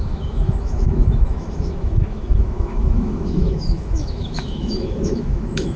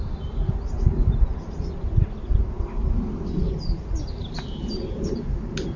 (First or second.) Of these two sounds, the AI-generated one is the first